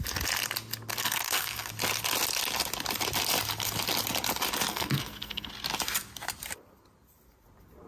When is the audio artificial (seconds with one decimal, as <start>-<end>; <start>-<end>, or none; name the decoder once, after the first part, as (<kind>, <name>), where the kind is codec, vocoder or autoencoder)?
0.9-1.7 (codec, SNAC); 4.7-5.5